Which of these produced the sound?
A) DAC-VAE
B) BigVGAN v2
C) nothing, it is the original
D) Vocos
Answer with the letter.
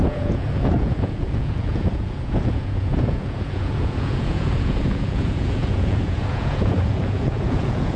D